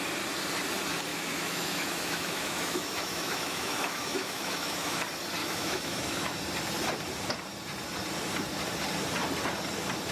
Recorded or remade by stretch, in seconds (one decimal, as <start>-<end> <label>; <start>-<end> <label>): 0.0-1.1 recorded; 1.1-5.0 remade; 5.0-5.4 recorded; 5.4-6.4 remade; 6.4-10.1 recorded